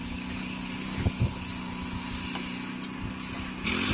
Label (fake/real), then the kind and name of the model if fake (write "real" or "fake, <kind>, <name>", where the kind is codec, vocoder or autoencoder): real